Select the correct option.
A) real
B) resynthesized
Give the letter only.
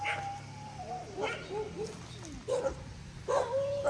A